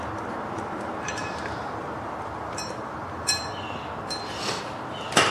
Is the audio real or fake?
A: fake